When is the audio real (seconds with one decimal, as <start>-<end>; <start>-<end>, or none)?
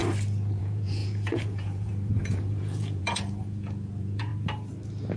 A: 0.0-0.6; 4.3-5.2